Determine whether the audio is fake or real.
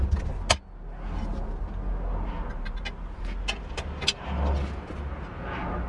real